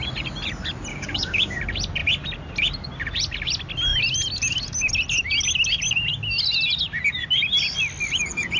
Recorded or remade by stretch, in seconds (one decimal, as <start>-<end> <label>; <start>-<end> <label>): 0.0-0.9 recorded; 0.9-1.6 remade; 1.6-8.6 recorded